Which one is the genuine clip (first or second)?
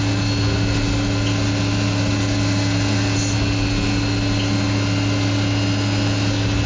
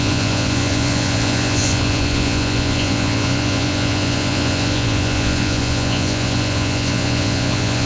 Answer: first